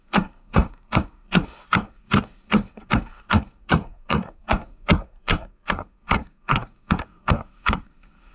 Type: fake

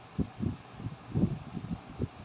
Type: real